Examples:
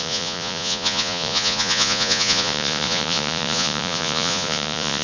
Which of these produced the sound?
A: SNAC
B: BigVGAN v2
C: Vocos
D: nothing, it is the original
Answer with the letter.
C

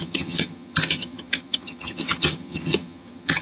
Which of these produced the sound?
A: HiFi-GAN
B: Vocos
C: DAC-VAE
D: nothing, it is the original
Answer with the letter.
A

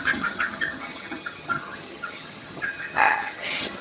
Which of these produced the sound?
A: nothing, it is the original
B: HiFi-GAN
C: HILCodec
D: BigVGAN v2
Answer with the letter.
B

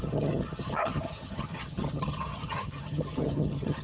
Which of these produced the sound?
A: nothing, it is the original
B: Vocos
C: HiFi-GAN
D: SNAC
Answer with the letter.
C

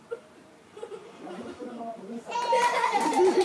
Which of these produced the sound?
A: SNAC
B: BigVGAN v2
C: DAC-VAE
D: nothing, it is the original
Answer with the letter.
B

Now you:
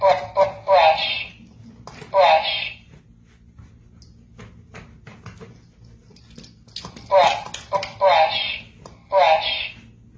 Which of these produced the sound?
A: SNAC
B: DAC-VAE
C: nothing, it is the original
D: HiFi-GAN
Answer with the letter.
C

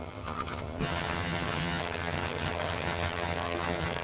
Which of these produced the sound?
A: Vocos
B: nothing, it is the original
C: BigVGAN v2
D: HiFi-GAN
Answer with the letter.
D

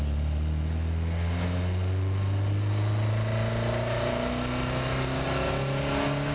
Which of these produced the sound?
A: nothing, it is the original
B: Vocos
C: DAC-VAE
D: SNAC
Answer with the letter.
A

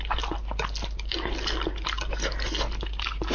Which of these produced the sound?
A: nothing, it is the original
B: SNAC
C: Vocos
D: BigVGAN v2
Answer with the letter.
A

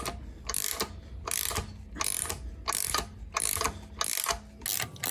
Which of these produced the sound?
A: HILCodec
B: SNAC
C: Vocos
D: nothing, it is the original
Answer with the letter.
D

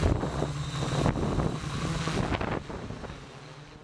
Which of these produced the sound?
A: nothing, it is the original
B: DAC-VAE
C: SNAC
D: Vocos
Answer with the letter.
A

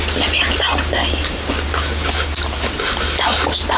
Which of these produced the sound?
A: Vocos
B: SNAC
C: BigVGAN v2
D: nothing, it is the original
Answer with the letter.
D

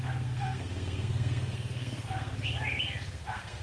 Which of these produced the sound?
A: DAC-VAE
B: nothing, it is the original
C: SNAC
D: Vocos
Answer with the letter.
C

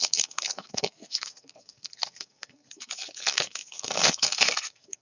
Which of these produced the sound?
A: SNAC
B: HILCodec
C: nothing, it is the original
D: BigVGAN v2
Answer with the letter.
A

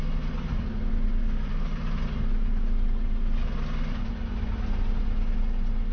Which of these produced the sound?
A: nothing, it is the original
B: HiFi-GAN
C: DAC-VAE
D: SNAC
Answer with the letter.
A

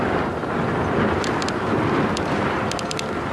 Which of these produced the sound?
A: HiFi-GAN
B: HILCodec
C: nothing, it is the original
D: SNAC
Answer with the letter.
C